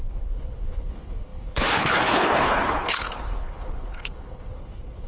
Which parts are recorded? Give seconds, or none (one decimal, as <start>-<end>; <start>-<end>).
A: none